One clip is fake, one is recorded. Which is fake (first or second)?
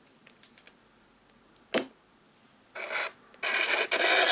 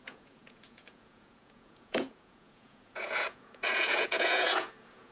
second